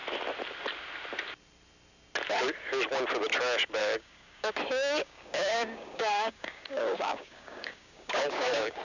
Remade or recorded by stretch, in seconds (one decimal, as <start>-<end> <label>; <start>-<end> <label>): 0.0-3.8 recorded; 3.8-4.5 remade; 4.5-5.0 recorded; 5.0-8.8 remade